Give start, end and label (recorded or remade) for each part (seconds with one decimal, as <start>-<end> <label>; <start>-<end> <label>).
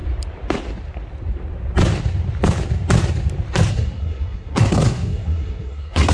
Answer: 0.0-3.7 recorded; 3.7-6.1 remade